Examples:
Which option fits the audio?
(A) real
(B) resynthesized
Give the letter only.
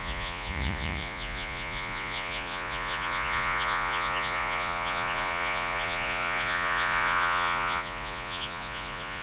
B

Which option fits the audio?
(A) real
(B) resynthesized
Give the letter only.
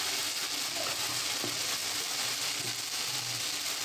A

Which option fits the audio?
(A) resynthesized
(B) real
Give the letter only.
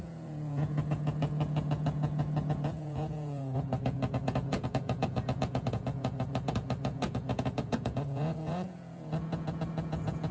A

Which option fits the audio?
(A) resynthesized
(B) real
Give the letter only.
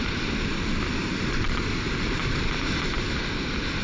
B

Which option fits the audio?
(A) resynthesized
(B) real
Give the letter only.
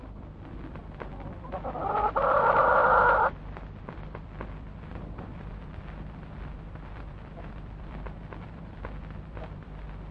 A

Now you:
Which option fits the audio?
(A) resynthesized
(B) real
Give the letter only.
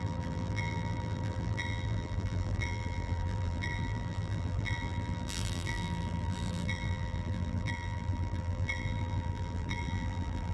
A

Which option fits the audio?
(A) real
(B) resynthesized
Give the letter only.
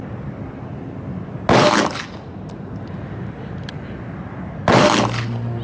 A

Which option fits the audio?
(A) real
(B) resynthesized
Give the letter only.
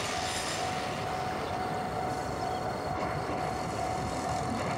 A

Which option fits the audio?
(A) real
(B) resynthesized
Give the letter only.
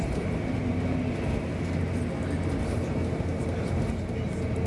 A